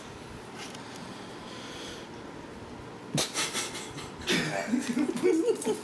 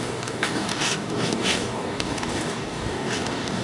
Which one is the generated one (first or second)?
second